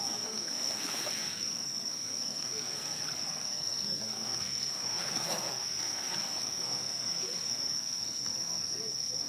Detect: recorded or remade remade